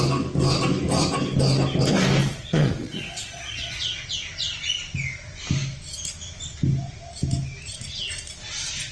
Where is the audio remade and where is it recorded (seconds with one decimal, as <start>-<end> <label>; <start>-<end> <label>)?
0.0-2.2 recorded; 2.2-3.8 remade; 3.8-8.9 recorded